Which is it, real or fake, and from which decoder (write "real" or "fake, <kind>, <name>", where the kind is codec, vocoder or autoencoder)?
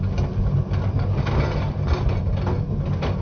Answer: real